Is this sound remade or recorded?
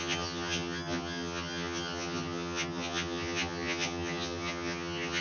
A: remade